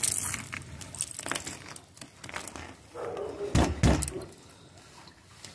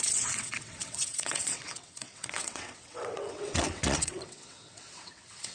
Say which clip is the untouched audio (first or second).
first